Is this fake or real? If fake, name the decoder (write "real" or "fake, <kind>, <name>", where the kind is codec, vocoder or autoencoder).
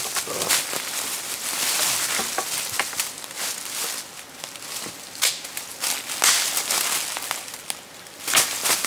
real